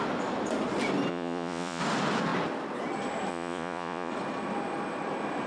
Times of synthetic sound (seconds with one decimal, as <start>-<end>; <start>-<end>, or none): 1.1-1.8; 3.3-4.1